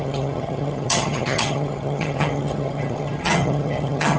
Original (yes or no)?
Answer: no